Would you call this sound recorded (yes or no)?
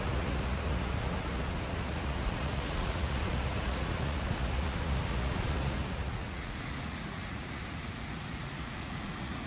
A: no